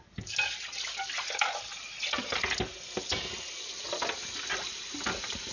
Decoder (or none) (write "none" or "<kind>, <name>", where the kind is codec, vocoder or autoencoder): none